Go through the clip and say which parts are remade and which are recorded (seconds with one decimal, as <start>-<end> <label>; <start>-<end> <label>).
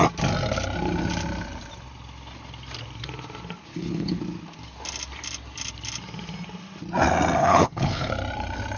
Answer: 0.0-3.7 recorded; 3.7-4.2 remade; 4.2-7.4 recorded; 7.4-8.1 remade; 8.1-8.8 recorded